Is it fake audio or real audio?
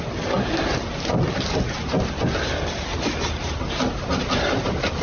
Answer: real